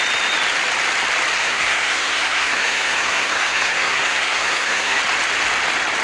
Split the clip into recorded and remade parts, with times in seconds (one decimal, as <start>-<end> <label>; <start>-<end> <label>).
0.0-1.4 recorded; 1.4-5.0 remade; 5.0-6.0 recorded